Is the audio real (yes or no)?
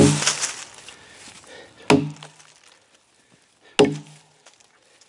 yes